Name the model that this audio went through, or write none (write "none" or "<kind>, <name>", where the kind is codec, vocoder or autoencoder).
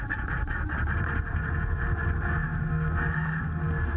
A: none